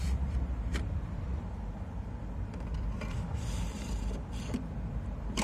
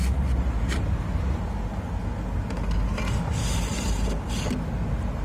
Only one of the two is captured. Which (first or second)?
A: second